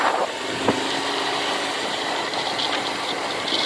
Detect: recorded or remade remade